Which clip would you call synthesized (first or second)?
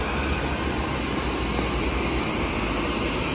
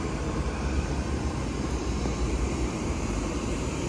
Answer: second